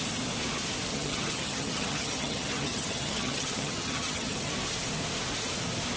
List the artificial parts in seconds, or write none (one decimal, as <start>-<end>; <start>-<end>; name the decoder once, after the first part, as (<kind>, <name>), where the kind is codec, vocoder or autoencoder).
0.9-4.5 (vocoder, HiFi-GAN)